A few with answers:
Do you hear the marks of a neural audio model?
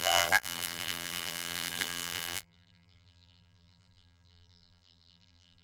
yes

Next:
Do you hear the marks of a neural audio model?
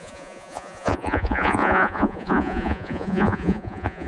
yes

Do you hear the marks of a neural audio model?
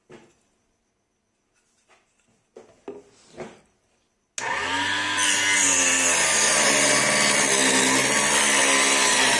no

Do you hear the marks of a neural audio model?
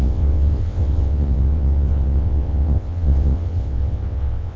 yes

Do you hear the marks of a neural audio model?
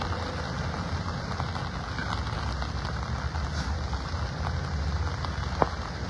no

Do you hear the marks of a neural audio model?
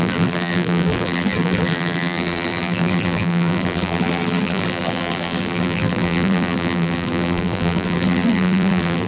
yes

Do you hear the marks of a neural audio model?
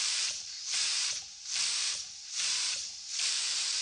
yes